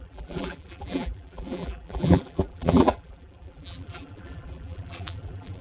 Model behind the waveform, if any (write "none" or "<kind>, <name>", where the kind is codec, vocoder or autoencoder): vocoder, BigVGAN v2